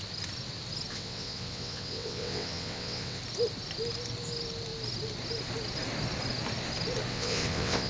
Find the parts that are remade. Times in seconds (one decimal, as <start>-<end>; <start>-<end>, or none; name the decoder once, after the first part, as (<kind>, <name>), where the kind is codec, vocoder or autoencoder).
0.9-3.2 (vocoder, WaveNeXt); 7.1-7.9